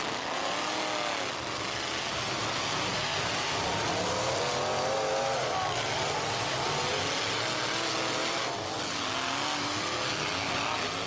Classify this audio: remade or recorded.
recorded